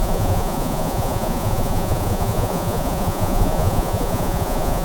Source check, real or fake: fake